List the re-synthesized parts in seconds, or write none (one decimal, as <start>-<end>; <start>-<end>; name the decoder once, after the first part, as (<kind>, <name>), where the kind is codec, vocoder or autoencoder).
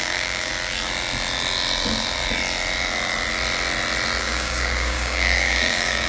0.0-0.5 (codec, DAC); 4.2-6.1